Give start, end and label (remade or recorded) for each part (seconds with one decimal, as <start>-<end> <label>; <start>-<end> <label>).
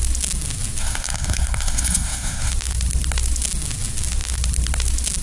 0.0-0.8 recorded; 0.8-2.5 remade; 2.5-5.2 recorded